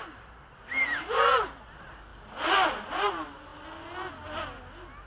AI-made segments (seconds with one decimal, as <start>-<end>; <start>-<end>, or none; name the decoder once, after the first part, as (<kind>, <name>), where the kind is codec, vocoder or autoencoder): none